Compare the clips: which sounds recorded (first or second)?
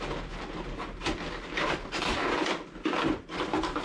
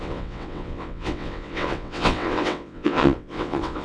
first